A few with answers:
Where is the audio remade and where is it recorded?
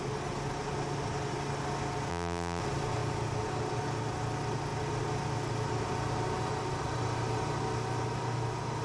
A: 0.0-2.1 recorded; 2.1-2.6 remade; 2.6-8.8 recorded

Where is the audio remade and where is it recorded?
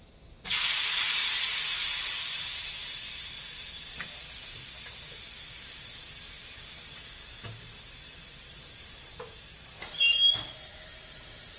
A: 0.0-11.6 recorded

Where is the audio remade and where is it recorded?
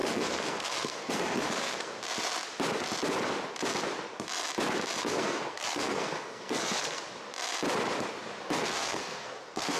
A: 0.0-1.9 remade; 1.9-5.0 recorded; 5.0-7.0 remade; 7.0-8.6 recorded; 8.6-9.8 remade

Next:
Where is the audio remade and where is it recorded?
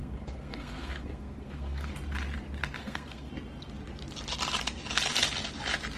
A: 0.0-1.9 remade; 1.9-2.8 recorded; 2.8-3.3 remade; 3.3-6.0 recorded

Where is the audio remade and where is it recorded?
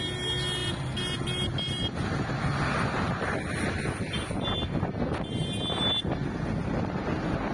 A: 0.0-5.4 recorded; 5.4-6.1 remade; 6.1-7.5 recorded